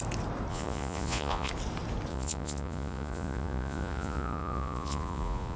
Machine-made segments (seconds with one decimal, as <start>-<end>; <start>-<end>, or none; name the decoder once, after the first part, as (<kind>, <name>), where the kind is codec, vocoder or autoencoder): 0.5-1.5 (vocoder, Vocos); 2.1-5.6